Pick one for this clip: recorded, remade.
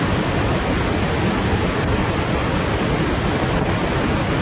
recorded